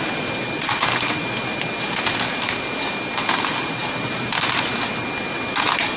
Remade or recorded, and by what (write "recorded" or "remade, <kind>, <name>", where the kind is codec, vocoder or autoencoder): recorded